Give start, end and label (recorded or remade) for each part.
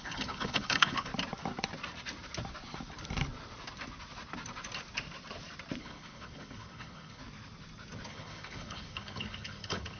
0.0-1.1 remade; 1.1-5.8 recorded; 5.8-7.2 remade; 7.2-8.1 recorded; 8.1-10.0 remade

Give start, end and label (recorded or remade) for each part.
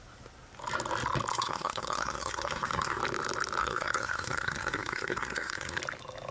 0.0-1.3 recorded; 1.3-3.0 remade; 3.0-3.6 recorded; 3.6-5.8 remade; 5.8-6.3 recorded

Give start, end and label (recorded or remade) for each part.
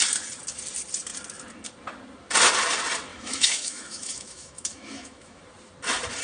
0.0-3.1 recorded; 3.1-5.4 remade; 5.4-6.2 recorded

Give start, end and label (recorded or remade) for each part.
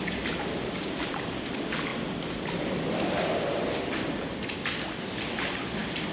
0.0-6.1 recorded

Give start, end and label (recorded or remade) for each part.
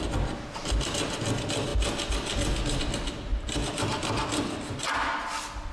0.0-3.3 recorded; 3.3-4.8 remade; 4.8-5.7 recorded